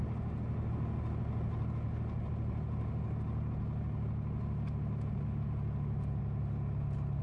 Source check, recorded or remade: recorded